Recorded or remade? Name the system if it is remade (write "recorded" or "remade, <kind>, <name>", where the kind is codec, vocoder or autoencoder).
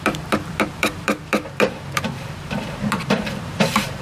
remade, vocoder, BigVGAN v2